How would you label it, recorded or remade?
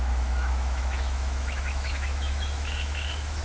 remade